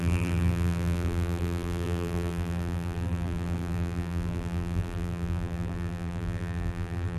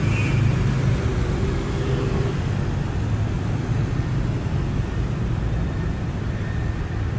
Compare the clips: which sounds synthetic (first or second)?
first